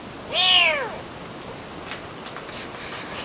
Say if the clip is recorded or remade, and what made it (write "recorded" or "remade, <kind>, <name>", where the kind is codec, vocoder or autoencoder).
recorded